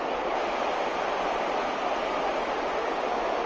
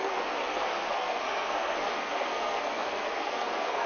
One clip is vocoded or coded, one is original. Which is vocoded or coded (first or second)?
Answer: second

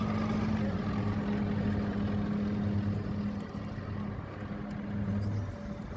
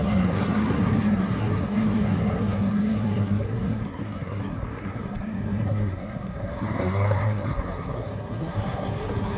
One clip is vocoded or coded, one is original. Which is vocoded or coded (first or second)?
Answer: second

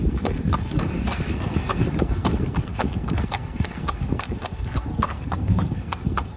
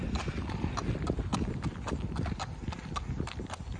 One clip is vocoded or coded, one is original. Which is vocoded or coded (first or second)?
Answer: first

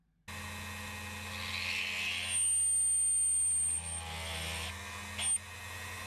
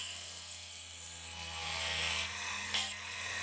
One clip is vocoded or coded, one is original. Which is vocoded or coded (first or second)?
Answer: second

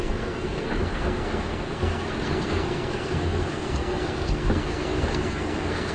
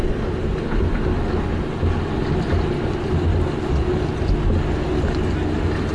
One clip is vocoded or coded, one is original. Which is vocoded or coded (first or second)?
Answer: first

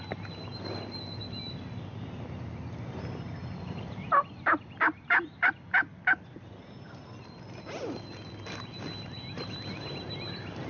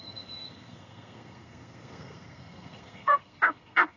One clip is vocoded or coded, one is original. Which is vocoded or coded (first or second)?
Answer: second